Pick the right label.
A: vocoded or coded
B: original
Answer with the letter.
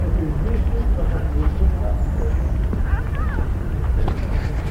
B